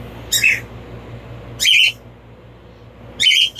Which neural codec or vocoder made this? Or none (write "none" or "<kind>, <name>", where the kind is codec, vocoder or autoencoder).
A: none